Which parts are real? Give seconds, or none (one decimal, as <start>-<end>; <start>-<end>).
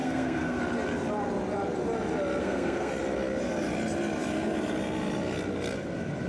0.6-2.4; 2.9-6.3